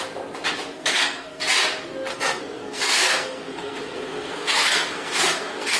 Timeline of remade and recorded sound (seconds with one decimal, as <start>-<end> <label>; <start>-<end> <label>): 0.0-0.7 recorded; 0.7-1.4 remade; 1.4-2.1 recorded; 2.1-5.8 remade